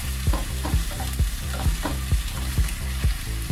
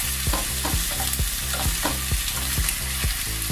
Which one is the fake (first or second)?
first